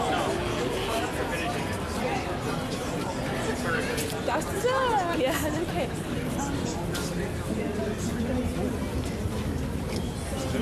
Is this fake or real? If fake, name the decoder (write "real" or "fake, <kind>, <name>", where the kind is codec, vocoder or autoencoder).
real